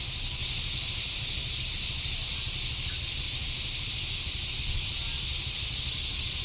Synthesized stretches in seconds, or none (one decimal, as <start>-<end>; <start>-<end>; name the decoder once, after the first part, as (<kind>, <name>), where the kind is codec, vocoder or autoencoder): none